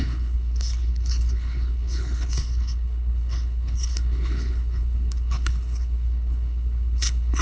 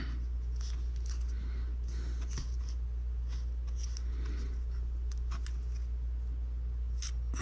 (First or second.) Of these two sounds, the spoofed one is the first